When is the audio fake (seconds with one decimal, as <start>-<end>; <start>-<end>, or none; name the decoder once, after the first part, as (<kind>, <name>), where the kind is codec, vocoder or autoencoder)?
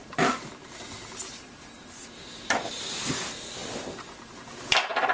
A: 0.0-2.8 (vocoder, BigVGAN v2)